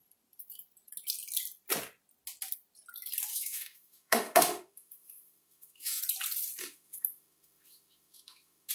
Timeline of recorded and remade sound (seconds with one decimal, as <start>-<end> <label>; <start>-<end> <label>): 0.0-3.3 recorded; 3.3-6.0 remade; 6.0-6.6 recorded; 6.6-8.7 remade